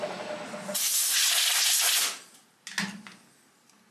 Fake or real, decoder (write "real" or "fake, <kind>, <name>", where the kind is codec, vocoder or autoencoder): real